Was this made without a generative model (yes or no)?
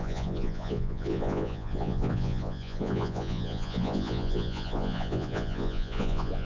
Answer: no